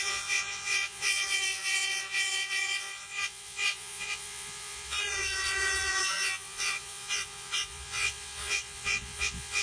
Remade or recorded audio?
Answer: remade